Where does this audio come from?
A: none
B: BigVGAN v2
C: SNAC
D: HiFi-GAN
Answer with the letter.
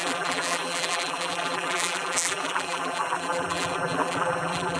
B